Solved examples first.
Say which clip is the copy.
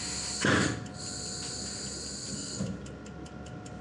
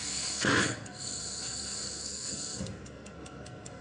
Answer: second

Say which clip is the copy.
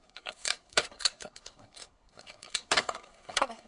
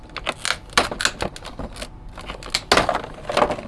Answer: first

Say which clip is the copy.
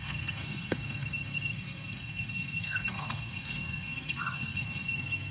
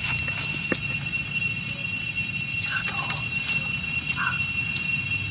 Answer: first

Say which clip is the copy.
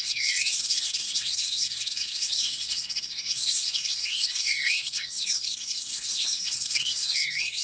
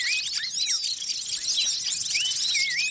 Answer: first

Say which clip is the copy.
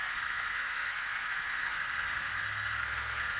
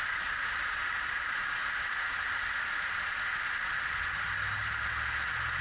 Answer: first